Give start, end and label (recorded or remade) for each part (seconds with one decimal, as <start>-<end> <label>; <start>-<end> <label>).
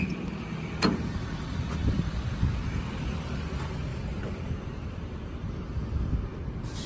0.0-3.9 recorded; 3.9-4.5 remade; 4.5-6.9 recorded